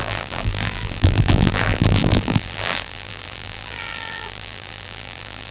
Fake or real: fake